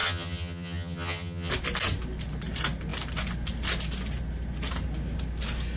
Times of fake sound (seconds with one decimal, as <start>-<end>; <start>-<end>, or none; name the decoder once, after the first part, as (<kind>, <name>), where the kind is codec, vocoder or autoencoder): 0.0-1.5 (vocoder, HiFi-GAN)

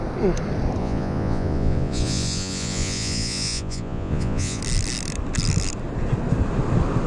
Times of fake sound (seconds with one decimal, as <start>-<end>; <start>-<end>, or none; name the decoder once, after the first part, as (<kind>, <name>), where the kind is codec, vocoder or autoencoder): 0.8-4.6 (vocoder, Vocos)